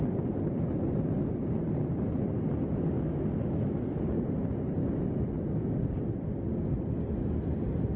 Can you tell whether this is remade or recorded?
recorded